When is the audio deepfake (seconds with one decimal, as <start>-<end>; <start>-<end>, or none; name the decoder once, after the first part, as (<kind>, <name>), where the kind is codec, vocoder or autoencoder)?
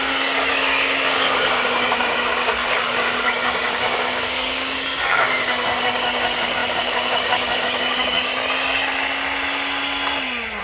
0.0-8.3 (codec, DAC)